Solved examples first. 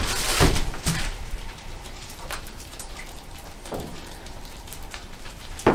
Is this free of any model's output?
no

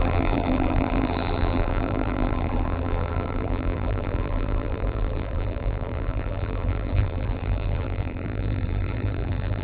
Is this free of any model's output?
no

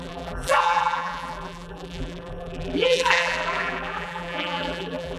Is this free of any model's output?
no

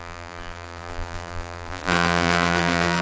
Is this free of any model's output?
no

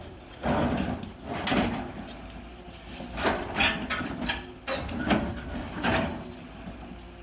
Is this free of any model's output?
yes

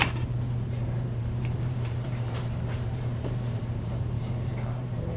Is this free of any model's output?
no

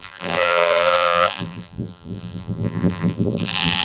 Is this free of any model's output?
no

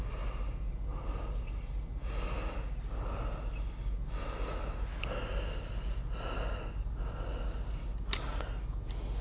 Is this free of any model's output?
yes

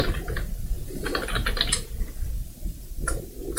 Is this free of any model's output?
no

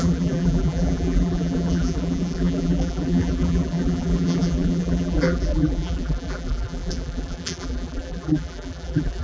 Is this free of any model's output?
no